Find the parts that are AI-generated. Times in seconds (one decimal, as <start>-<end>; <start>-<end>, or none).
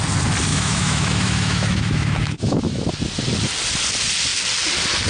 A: 0.5-2.9